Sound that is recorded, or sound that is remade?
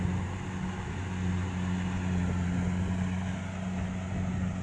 recorded